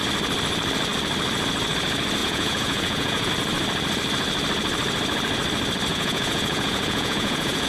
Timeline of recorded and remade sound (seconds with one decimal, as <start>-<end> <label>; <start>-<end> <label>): 0.0-2.2 recorded; 2.2-3.3 remade; 3.3-5.9 recorded; 5.9-7.7 remade